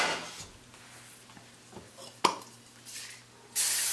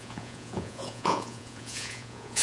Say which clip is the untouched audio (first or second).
first